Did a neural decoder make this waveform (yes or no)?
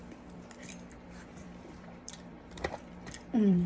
yes